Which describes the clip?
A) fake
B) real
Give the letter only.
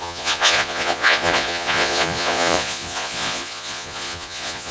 A